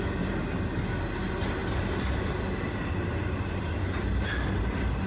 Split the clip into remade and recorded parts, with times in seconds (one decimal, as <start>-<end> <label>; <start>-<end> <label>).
0.0-5.1 recorded